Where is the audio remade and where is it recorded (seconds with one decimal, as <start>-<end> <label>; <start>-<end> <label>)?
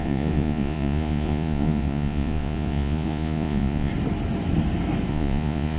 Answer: 0.0-3.9 remade; 3.9-5.1 recorded; 5.1-5.8 remade